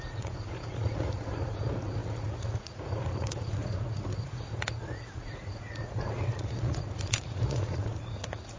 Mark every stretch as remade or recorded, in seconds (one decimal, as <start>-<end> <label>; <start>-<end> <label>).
0.0-8.6 remade